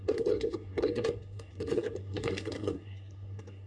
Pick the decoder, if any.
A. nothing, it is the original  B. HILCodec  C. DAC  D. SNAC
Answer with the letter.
D